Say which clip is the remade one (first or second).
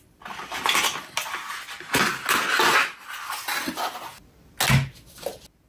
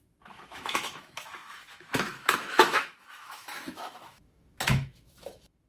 second